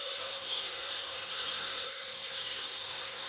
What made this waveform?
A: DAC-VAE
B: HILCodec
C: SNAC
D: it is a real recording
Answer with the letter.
C